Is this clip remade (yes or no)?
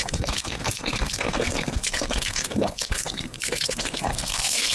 yes